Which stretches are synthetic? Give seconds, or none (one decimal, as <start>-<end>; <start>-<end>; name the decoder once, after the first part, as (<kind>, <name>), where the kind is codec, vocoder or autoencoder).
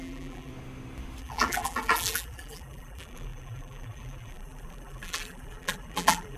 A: 0.0-0.5 (vocoder, BigVGAN v2); 1.2-6.4